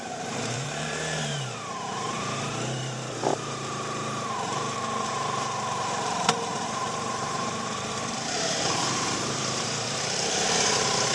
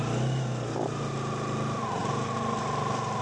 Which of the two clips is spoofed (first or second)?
first